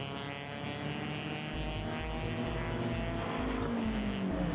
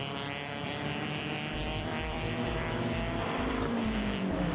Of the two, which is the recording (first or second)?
first